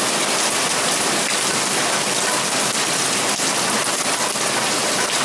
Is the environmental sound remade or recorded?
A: recorded